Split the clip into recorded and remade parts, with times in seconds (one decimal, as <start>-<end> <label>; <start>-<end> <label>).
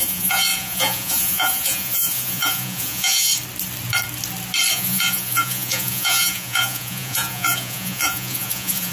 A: 0.0-3.3 remade; 3.3-4.7 recorded; 4.7-8.9 remade